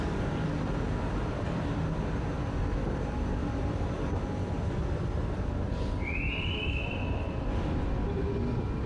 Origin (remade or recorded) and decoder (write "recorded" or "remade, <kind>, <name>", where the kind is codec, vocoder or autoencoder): remade, vocoder, BigVGAN v2